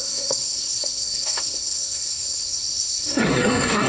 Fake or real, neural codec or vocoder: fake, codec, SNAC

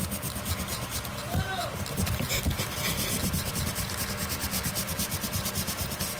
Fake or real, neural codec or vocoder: real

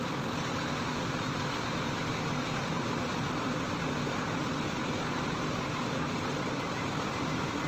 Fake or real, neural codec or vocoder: real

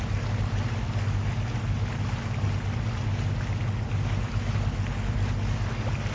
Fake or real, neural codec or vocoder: real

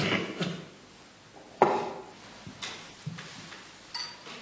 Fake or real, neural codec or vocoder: real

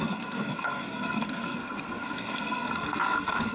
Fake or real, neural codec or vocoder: fake, codec, SNAC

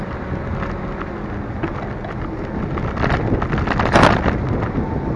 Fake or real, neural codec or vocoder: real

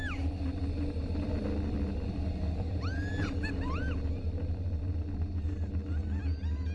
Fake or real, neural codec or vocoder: real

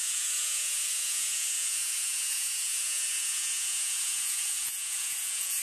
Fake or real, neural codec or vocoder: fake, vocoder, Vocos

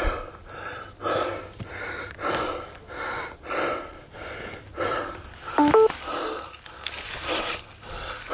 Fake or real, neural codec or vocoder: real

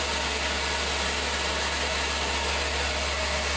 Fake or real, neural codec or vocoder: real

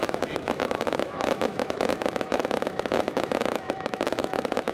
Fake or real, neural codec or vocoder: fake, autoencoder, DAC-VAE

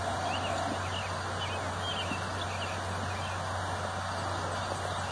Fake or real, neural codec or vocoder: real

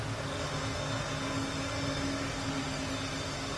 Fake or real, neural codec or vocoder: real